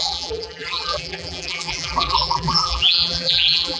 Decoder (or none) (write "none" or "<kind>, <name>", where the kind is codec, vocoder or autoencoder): vocoder, BigVGAN v2